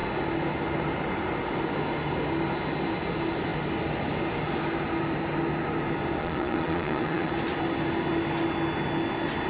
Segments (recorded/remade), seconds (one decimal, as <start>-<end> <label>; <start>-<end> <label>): 0.0-6.2 recorded; 6.2-7.3 remade; 7.3-9.5 recorded